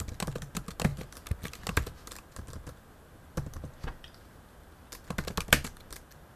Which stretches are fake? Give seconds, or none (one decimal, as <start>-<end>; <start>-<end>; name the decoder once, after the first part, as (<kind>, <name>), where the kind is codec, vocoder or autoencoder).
none